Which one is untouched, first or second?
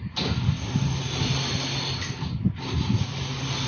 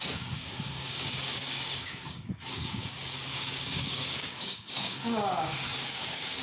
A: first